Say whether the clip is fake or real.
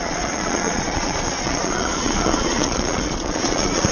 fake